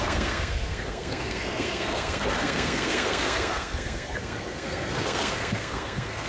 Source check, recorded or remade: remade